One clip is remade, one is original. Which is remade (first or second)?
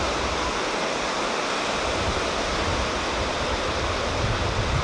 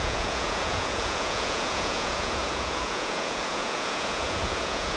second